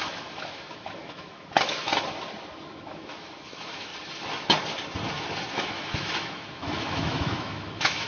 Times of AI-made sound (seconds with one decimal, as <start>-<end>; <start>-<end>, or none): 0.0-1.9; 2.6-3.9; 5.5-8.1